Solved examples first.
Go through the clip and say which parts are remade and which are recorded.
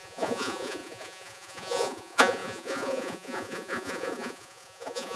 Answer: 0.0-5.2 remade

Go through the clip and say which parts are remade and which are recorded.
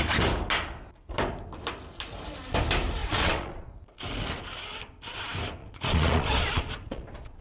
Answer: 0.0-3.0 recorded; 3.0-3.7 remade; 3.7-5.6 recorded; 5.6-7.4 remade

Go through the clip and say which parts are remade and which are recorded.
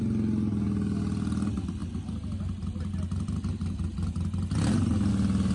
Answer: 0.0-5.5 recorded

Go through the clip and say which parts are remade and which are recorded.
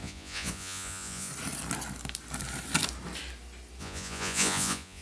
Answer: 0.0-1.3 remade; 1.3-3.8 recorded; 3.8-5.0 remade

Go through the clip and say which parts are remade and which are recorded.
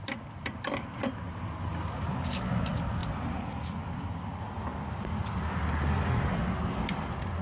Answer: 0.0-7.4 recorded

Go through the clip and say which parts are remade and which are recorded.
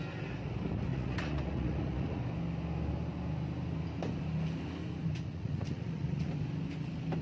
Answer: 0.0-0.9 recorded; 0.9-2.2 remade; 2.2-5.1 recorded; 5.1-6.3 remade; 6.3-7.2 recorded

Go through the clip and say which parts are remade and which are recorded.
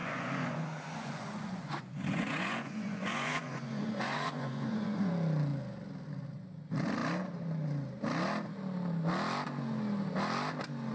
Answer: 0.0-5.1 remade; 5.1-10.9 recorded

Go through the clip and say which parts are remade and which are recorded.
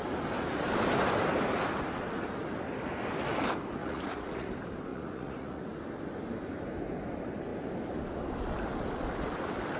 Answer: 0.0-3.8 recorded; 3.8-4.5 remade; 4.5-4.9 recorded; 4.9-5.6 remade; 5.6-9.8 recorded